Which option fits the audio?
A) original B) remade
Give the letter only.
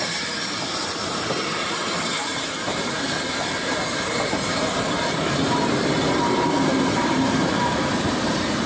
B